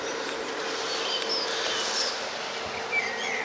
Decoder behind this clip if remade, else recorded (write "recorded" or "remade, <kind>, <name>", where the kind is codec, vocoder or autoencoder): recorded